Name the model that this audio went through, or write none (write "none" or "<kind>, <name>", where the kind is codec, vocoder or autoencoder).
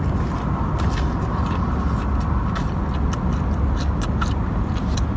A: none